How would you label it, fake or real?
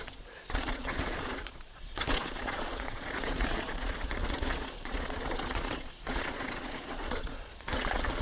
fake